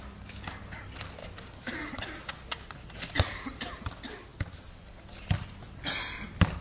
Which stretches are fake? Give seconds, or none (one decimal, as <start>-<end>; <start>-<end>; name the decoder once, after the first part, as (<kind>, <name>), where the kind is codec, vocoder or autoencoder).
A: none